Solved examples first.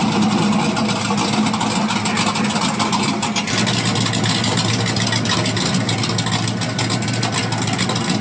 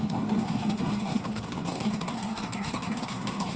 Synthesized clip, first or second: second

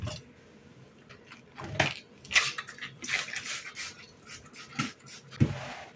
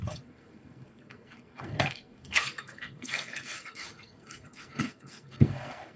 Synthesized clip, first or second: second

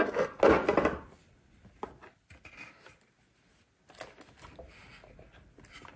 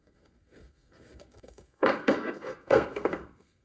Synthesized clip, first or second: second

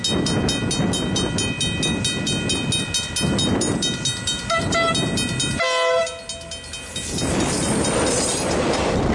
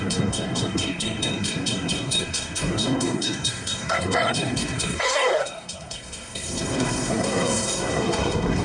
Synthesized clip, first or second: second